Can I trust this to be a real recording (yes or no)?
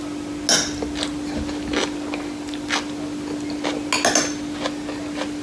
yes